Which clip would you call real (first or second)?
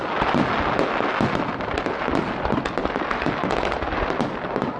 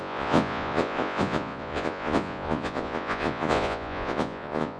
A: first